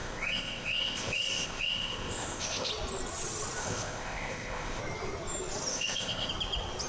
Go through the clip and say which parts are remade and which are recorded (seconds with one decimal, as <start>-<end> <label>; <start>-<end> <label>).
0.0-2.7 remade; 2.7-3.6 recorded; 3.6-4.8 remade; 4.8-5.7 recorded; 5.7-6.3 remade; 6.3-6.9 recorded